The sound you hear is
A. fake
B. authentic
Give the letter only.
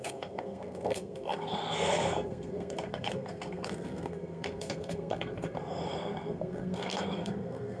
A